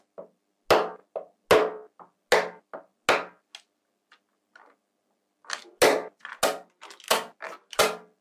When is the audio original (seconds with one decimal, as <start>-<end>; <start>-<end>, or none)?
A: 0.0-8.2